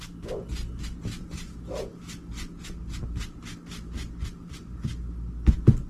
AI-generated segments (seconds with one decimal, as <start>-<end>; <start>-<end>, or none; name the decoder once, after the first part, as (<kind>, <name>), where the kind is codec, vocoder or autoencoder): none